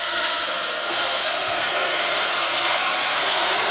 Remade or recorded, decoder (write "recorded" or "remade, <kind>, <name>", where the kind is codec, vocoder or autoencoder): remade, codec, SNAC